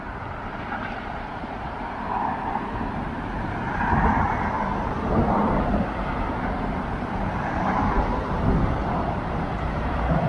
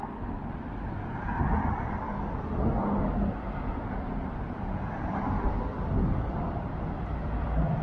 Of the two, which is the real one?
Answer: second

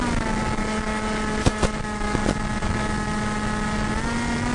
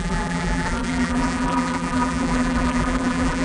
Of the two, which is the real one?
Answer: first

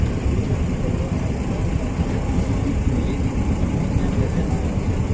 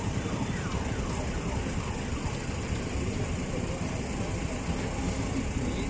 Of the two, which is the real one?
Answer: second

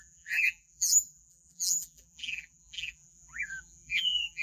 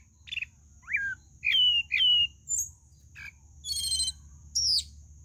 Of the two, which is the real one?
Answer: second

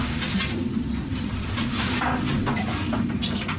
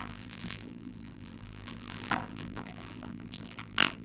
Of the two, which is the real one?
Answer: first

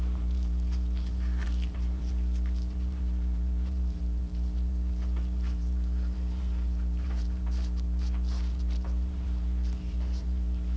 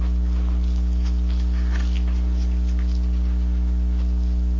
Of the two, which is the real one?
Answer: second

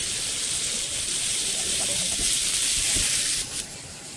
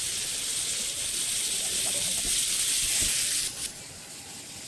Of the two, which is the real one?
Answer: second